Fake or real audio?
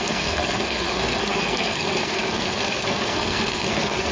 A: fake